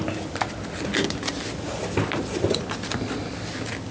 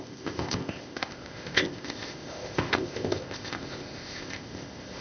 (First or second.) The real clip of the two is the first